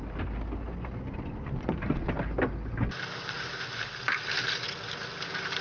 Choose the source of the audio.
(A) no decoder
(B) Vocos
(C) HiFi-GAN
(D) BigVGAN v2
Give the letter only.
A